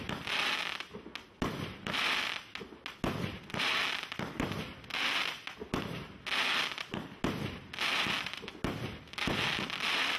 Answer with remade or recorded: recorded